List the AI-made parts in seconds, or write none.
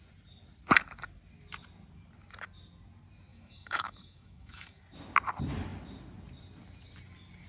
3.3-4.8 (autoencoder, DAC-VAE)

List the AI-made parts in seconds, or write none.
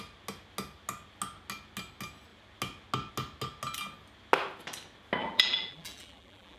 5.2-6.6 (vocoder, BigVGAN v2)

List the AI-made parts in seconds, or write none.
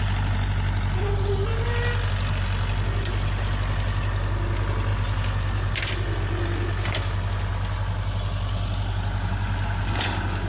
none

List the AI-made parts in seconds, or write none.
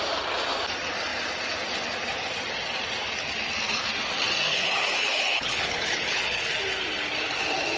4.5-6.5 (codec, HILCodec)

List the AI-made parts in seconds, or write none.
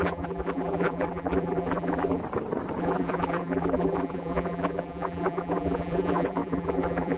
0.0-2.2 (vocoder, BigVGAN v2); 2.8-7.2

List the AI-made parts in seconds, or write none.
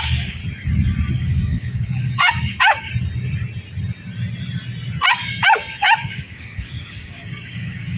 0.0-0.4 (codec, DAC); 1.1-2.9; 5.1-8.0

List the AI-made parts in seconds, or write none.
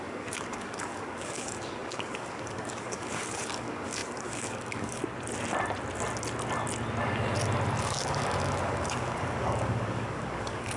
0.0-5.0 (codec, DAC); 7.8-10.8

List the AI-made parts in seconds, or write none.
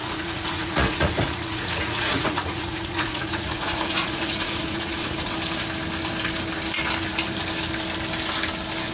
0.0-5.3 (vocoder, Vocos)